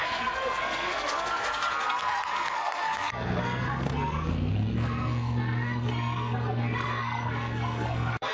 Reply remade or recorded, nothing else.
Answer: remade